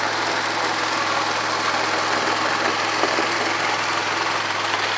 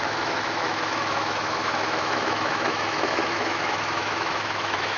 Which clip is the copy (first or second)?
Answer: second